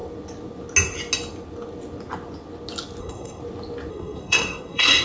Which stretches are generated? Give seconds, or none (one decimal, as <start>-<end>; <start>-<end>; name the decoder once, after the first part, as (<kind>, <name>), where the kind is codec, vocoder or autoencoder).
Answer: 3.0-3.4 (codec, SNAC); 3.9-5.0